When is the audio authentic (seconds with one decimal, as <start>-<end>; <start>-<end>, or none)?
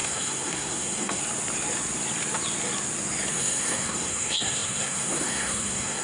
1.2-3.3